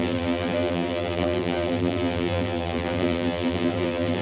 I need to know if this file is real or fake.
fake